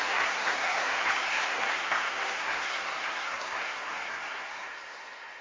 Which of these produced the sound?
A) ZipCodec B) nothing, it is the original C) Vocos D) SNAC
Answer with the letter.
D